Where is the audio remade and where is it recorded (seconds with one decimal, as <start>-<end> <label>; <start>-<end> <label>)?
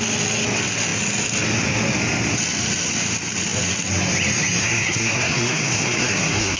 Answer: 0.0-4.6 recorded; 4.6-6.6 remade